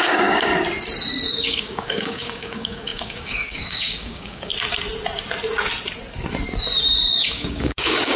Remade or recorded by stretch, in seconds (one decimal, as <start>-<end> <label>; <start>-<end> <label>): 0.0-0.5 remade; 0.5-1.3 recorded; 1.3-4.5 remade; 4.5-7.1 recorded; 7.1-8.2 remade